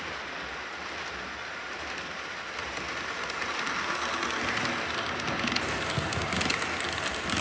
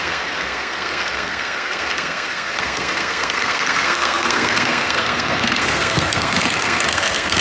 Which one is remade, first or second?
second